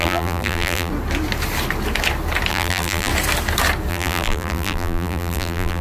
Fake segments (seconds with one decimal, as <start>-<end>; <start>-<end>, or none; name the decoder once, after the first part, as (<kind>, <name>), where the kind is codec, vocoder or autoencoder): 0.0-0.9 (vocoder, BigVGAN v2); 2.5-3.1; 3.9-5.8